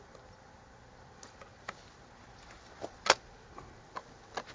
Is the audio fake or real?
real